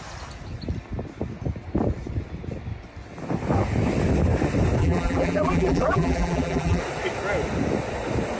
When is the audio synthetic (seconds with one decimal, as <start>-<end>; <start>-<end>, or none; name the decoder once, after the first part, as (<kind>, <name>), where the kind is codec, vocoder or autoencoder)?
4.8-6.8 (vocoder, BigVGAN v2)